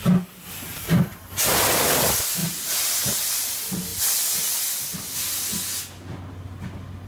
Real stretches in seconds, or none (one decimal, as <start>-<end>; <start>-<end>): 0.0-7.1